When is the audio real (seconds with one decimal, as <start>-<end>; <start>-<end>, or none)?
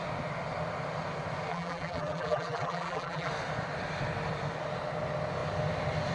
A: 0.0-1.5; 3.3-6.1